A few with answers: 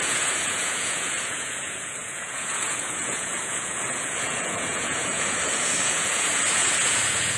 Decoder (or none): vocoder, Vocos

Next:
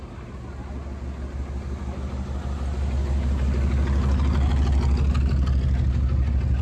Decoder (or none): none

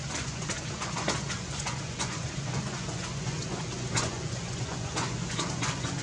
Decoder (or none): vocoder, Vocos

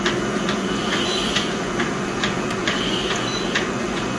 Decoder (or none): vocoder, Vocos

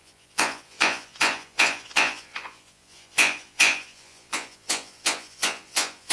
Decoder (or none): vocoder, Vocos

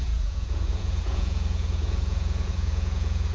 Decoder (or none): vocoder, Vocos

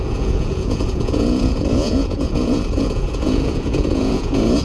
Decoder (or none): vocoder, Vocos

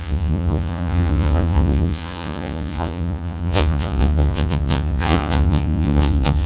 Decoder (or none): vocoder, Vocos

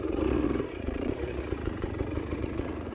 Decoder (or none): vocoder, Vocos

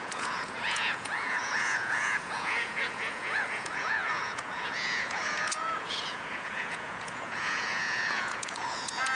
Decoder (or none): vocoder, Vocos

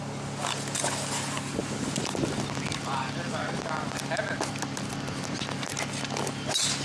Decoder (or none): none